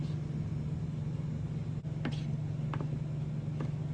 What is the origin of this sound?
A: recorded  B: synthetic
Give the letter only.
A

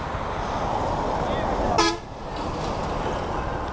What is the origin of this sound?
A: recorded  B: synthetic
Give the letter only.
A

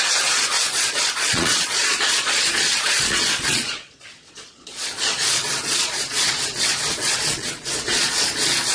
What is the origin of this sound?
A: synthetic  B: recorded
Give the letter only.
A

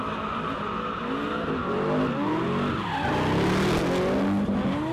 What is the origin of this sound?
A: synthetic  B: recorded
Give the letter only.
B